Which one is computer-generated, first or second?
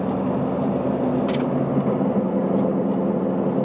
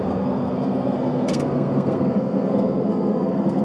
second